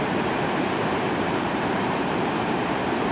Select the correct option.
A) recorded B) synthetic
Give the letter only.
B